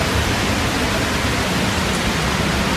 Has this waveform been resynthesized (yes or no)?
no